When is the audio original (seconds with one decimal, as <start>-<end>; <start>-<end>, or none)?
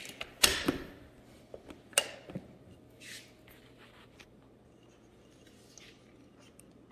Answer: 0.0-0.5; 1.2-6.9